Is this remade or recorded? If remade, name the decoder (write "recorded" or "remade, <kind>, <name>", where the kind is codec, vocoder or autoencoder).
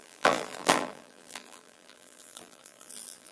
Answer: remade, vocoder, BigVGAN v2